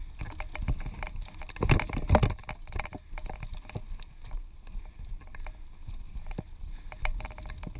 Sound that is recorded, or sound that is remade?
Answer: recorded